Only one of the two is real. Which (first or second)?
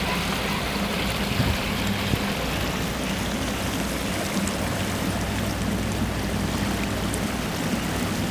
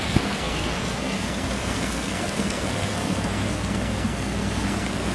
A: first